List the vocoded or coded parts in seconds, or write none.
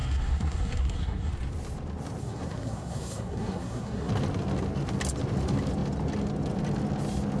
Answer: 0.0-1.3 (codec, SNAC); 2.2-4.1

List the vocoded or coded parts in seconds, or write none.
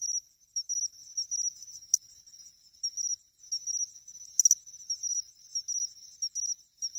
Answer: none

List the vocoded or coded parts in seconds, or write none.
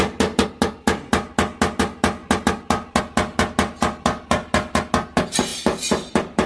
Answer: 5.5-6.5 (vocoder, BigVGAN v2)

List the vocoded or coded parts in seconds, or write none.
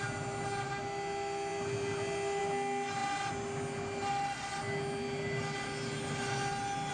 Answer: none